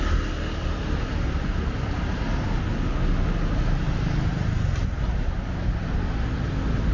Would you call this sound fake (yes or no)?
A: no